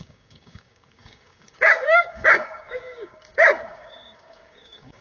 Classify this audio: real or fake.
fake